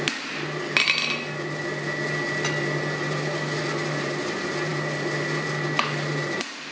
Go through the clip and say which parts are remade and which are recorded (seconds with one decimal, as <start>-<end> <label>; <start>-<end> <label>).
0.0-6.7 recorded